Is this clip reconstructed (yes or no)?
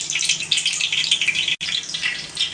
no